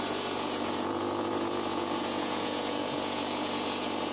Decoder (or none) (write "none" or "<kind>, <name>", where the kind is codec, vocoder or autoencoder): vocoder, Vocos